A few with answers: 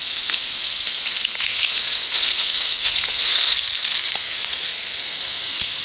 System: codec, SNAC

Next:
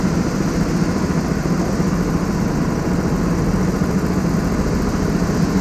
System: none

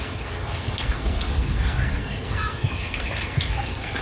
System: codec, SNAC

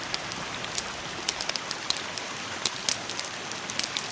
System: none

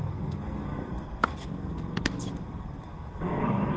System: codec, SNAC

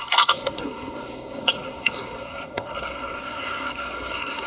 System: codec, SNAC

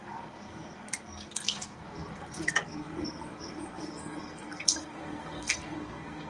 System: codec, SNAC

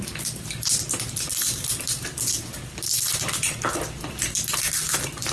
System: none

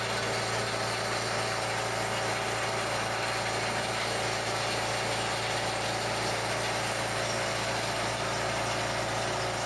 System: none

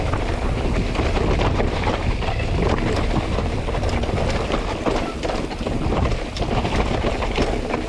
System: none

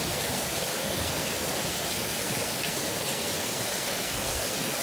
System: codec, SNAC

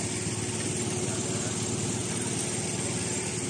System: none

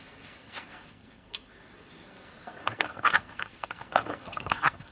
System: codec, SNAC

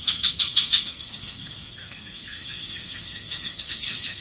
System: codec, SNAC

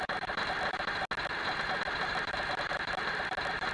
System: none